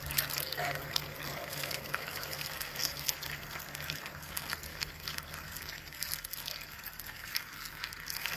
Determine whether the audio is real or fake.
fake